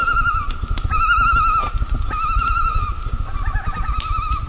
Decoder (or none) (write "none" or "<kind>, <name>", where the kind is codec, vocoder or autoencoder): none